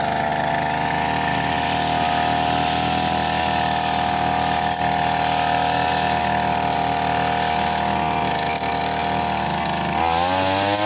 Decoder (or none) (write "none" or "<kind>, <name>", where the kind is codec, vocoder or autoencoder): none